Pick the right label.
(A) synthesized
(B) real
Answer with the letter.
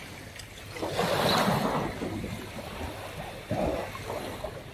B